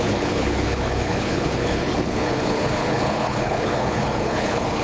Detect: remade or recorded remade